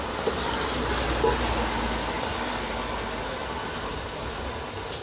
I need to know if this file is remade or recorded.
recorded